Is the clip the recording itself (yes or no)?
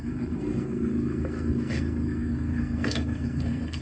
no